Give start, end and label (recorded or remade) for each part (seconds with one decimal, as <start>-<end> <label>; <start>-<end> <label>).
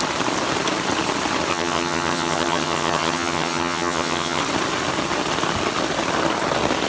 0.0-1.5 recorded; 1.5-4.4 remade; 4.4-6.9 recorded